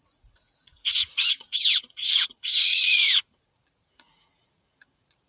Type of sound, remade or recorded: remade